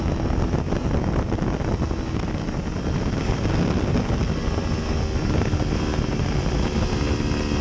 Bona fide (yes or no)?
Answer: yes